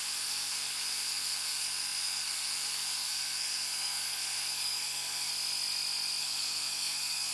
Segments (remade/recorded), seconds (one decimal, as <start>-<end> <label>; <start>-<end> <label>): 0.0-5.3 remade; 5.3-6.2 recorded; 6.2-7.3 remade